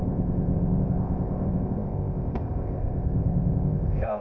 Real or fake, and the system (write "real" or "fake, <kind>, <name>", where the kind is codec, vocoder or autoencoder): fake, codec, ZipCodec